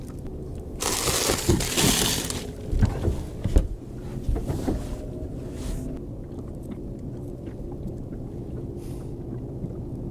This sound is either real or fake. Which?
real